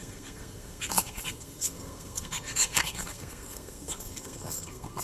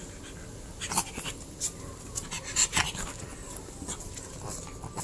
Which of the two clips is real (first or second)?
second